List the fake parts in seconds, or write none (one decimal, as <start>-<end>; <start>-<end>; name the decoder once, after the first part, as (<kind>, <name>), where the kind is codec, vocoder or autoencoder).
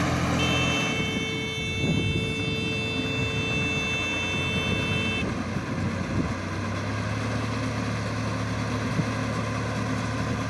none